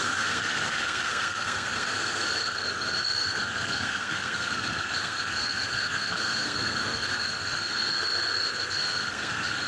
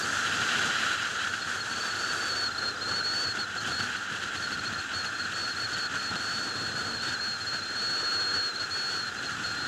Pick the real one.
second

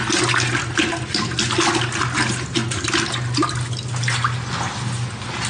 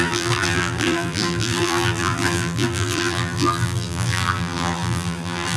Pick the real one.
first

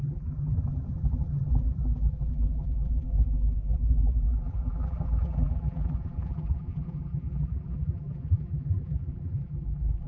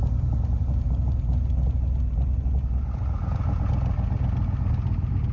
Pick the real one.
second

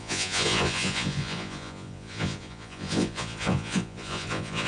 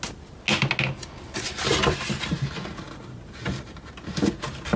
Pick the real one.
second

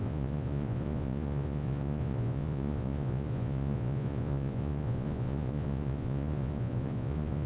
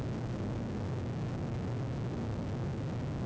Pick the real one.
second